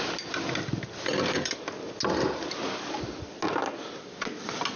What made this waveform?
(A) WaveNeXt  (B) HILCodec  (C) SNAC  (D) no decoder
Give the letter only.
D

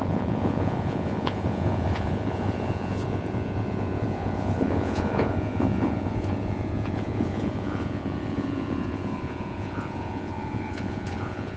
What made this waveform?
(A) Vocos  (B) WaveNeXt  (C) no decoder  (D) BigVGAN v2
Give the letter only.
A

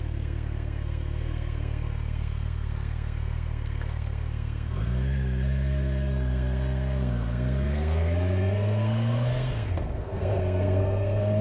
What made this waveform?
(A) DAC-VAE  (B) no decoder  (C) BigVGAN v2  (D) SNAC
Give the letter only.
D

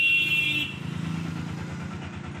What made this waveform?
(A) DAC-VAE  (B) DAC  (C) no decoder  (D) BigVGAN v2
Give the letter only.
C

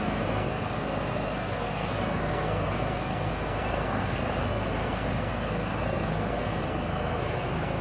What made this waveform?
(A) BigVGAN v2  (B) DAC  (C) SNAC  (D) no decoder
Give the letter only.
C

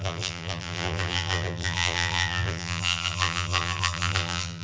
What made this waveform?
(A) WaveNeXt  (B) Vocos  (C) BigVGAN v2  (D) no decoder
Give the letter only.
C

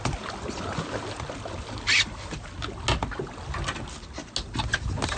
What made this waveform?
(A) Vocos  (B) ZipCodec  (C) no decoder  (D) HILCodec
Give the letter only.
C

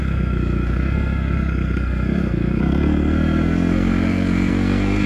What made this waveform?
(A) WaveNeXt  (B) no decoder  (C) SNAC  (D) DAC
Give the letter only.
C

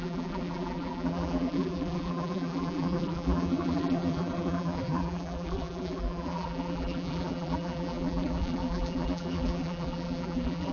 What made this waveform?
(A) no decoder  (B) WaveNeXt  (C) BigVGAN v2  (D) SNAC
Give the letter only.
C